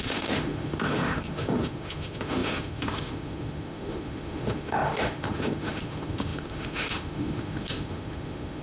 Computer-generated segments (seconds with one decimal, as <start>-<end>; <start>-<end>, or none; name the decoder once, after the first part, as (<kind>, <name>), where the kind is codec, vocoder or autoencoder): 0.0-8.6 (autoencoder, DAC-VAE)